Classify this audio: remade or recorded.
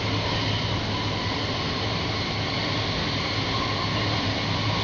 recorded